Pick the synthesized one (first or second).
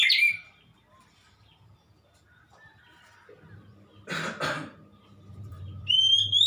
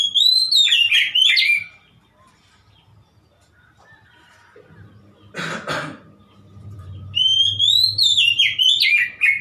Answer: first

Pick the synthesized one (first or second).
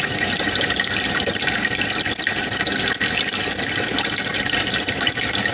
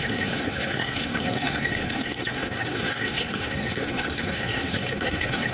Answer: second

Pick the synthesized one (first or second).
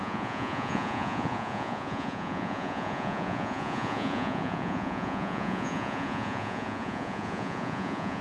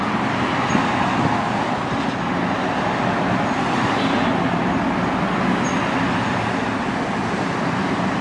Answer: first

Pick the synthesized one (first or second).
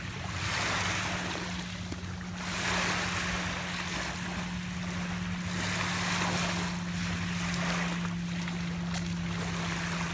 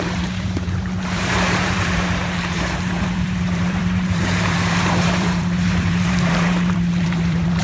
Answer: second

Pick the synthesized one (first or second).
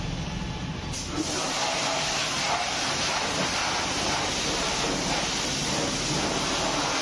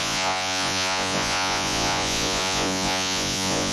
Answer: second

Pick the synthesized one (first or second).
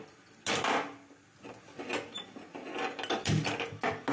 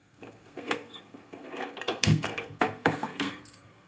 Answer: second